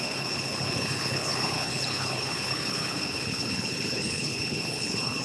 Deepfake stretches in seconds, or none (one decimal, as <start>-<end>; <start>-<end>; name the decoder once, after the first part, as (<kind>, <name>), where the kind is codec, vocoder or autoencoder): 0.0-5.2 (codec, HILCodec)